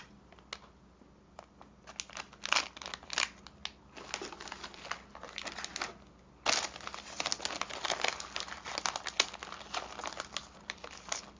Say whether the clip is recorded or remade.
recorded